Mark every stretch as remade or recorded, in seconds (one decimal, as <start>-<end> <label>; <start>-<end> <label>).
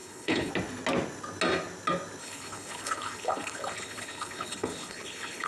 0.0-0.5 remade; 0.5-2.2 recorded; 2.2-5.5 remade